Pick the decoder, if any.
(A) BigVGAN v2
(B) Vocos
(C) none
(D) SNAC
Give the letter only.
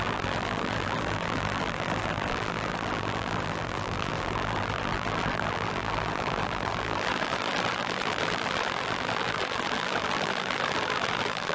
A